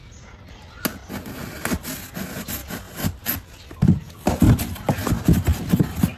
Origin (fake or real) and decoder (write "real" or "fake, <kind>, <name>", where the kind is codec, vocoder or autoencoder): real